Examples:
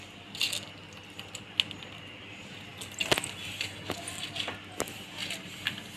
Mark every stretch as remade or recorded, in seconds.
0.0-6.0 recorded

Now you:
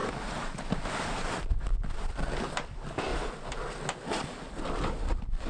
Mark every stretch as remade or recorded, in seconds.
0.0-3.1 remade; 3.1-4.1 recorded; 4.1-5.5 remade

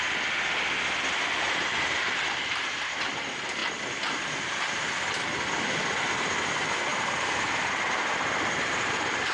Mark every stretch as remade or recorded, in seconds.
0.0-1.6 recorded; 1.6-3.1 remade; 3.1-6.9 recorded; 6.9-9.3 remade

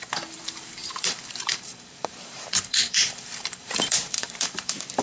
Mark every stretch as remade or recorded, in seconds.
0.0-5.0 remade

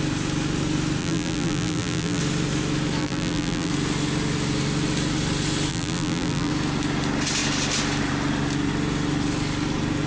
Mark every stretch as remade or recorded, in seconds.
0.0-1.0 recorded; 1.0-2.2 remade; 2.2-3.0 recorded; 3.0-3.7 remade; 3.7-5.7 recorded; 5.7-6.5 remade; 6.5-10.1 recorded